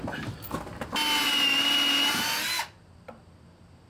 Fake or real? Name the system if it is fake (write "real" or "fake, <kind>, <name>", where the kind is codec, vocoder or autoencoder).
real